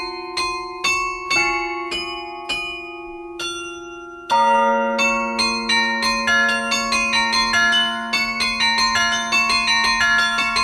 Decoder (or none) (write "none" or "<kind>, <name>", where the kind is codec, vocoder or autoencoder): none